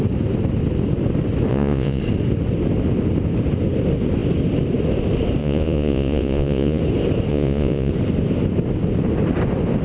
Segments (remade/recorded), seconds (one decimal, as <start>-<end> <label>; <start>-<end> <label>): 0.0-1.5 recorded; 1.5-2.0 remade; 2.0-5.4 recorded; 5.4-6.8 remade; 6.8-7.3 recorded; 7.3-7.9 remade; 7.9-9.8 recorded